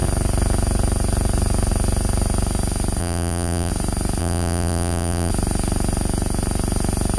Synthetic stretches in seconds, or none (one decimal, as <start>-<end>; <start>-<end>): 3.0-3.7; 4.2-5.3